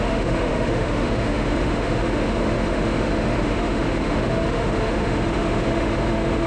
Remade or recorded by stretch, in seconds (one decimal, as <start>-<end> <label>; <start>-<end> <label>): 0.0-6.5 remade